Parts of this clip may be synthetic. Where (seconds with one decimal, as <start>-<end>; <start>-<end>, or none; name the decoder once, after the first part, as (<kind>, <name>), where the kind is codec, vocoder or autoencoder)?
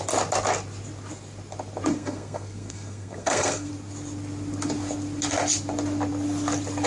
1.9-3.7 (codec, SNAC)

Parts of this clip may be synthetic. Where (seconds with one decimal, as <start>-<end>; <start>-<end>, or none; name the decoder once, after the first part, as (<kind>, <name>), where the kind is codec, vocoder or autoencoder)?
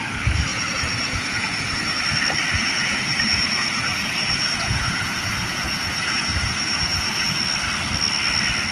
0.5-2.0 (vocoder, Vocos); 2.5-7.4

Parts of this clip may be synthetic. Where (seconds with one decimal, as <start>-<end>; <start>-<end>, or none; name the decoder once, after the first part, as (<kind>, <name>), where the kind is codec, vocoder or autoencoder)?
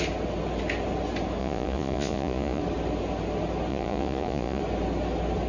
1.4-2.6 (vocoder, Vocos); 3.7-4.6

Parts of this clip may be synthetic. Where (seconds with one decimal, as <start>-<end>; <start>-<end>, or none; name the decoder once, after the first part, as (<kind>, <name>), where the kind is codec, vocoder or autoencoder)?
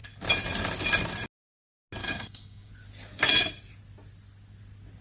2.0-2.7 (codec, DAC)